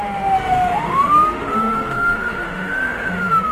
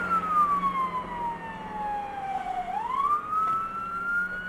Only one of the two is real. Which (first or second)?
second